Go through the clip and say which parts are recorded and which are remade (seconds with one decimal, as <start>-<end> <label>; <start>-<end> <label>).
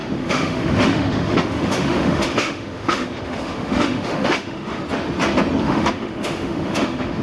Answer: 0.0-4.8 remade; 4.8-5.6 recorded; 5.6-7.2 remade